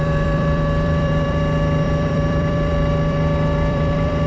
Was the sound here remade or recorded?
remade